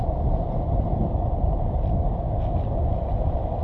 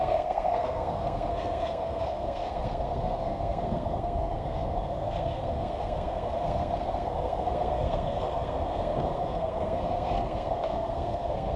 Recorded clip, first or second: first